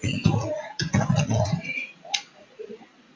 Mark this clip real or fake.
fake